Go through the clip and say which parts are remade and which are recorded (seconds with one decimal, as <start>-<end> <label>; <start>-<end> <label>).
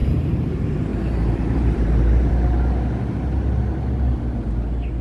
0.0-0.5 remade; 0.5-0.9 recorded; 0.9-2.3 remade; 2.3-5.0 recorded